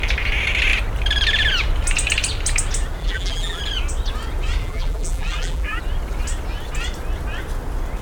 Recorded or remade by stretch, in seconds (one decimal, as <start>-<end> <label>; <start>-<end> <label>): 0.0-3.0 recorded; 3.0-3.6 remade; 3.6-4.6 recorded; 4.6-5.8 remade; 5.8-8.0 recorded